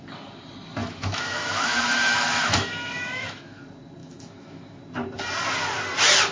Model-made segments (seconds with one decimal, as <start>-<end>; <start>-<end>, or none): 0.8-3.6; 4.0-4.8